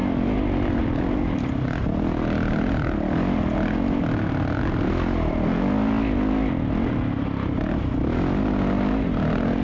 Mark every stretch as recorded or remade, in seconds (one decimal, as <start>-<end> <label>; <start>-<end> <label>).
0.0-9.6 recorded